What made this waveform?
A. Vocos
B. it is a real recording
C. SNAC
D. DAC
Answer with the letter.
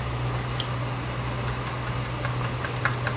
B